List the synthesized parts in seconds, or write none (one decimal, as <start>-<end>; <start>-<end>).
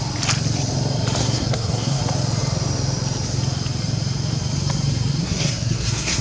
1.2-2.0; 5.2-6.2